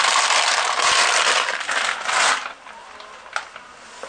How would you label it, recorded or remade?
recorded